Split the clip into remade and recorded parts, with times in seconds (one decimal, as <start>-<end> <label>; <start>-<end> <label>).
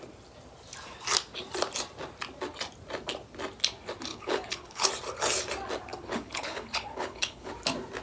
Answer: 0.0-4.1 recorded; 4.1-4.9 remade; 4.9-5.9 recorded; 5.9-7.5 remade; 7.5-8.0 recorded